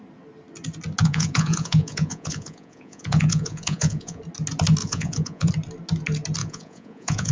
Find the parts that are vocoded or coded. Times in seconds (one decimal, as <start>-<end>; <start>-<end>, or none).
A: 1.0-4.2; 4.8-5.5; 6.4-7.3